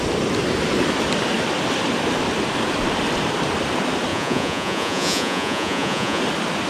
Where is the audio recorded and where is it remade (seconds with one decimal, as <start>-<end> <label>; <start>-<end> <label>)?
0.0-4.1 recorded; 4.1-6.2 remade; 6.2-6.7 recorded